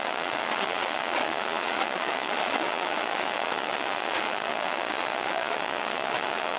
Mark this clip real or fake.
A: fake